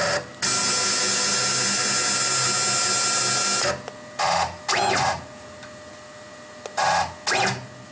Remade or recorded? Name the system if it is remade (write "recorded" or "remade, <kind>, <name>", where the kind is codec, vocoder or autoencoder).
recorded